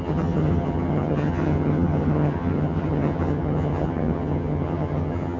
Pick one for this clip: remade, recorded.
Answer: remade